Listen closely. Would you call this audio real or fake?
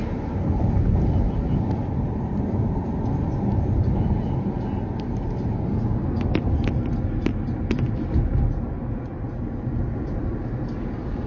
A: real